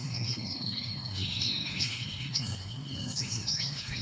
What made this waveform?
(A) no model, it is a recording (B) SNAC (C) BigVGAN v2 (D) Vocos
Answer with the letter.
B